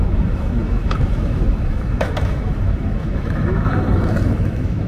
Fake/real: fake